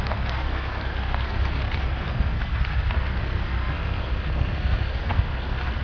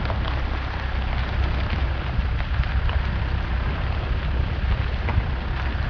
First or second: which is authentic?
second